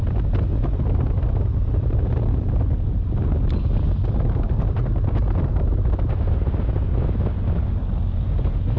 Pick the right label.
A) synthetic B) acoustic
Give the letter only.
B